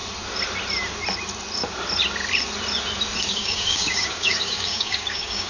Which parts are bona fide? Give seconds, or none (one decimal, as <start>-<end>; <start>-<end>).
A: 0.0-3.3